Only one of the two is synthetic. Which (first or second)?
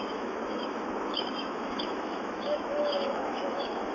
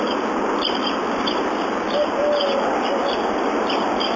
first